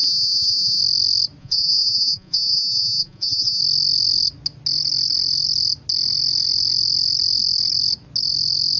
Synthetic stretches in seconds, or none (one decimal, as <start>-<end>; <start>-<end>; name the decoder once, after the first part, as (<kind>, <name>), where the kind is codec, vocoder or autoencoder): 0.0-0.8 (vocoder, Vocos); 1.4-3.6